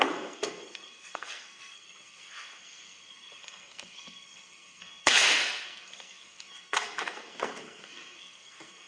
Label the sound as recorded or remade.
remade